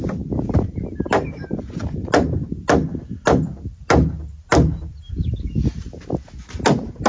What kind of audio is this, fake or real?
real